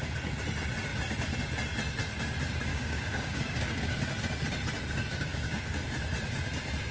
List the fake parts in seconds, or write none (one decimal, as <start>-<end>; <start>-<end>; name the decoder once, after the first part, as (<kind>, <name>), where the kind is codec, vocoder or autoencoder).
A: 2.7-4.0 (codec, DAC); 5.1-5.8